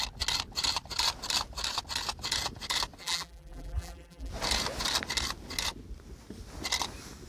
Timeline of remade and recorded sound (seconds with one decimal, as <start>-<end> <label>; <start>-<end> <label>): 0.0-3.0 recorded; 3.0-4.3 remade; 4.3-7.3 recorded